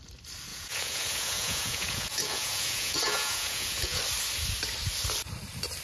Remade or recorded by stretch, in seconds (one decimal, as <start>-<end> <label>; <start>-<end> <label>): 0.0-0.5 recorded; 0.5-4.0 remade; 4.0-5.8 recorded